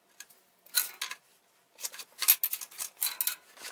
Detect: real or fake real